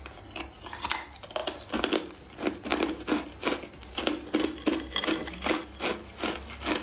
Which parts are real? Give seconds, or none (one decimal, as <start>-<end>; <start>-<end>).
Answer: 0.0-6.8